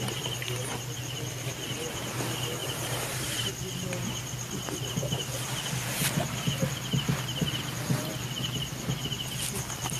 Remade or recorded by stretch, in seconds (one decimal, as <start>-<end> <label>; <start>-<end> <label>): 0.0-2.6 recorded; 2.6-3.5 remade; 3.5-10.0 recorded